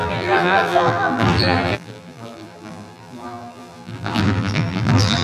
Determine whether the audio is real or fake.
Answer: fake